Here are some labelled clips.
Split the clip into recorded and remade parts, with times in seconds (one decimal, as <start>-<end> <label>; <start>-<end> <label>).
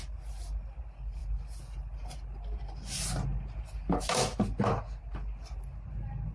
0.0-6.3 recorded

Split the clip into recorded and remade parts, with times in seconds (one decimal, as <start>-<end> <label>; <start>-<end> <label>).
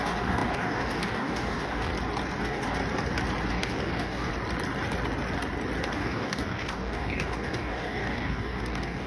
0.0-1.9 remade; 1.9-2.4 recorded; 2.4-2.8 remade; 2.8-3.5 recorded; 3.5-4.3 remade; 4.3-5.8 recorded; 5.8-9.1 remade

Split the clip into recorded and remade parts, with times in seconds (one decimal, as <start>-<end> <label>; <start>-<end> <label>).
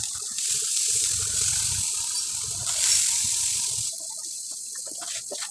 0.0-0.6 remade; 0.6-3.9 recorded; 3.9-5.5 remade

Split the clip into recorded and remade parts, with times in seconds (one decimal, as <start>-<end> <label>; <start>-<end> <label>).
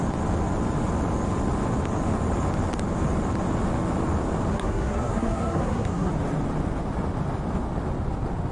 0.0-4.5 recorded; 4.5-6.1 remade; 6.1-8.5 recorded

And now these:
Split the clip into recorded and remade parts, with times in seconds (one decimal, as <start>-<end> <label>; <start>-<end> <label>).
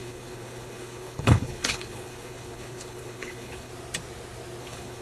0.0-3.7 remade; 3.7-4.6 recorded; 4.6-5.0 remade